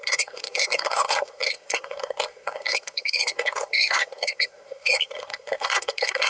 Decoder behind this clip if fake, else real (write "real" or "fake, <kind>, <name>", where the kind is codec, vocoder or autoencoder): fake, codec, SNAC